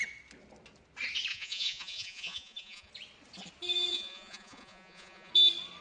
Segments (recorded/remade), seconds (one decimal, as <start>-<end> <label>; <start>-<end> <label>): 0.0-1.3 recorded; 1.3-2.9 remade; 2.9-3.9 recorded; 3.9-5.3 remade; 5.3-5.8 recorded